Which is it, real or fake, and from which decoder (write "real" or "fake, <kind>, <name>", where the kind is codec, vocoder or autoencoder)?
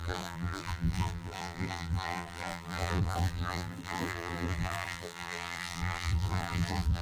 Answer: fake, vocoder, BigVGAN v2